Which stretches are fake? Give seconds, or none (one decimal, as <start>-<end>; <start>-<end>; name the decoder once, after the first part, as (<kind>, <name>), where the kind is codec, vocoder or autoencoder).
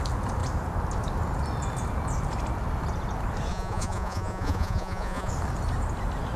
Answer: 3.5-5.3 (vocoder, Vocos)